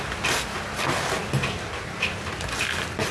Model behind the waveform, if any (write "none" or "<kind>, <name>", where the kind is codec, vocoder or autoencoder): none